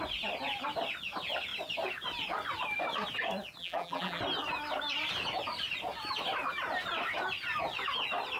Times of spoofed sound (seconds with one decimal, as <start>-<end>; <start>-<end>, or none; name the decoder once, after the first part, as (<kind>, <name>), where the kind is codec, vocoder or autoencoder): 3.6-4.2 (vocoder, BigVGAN v2)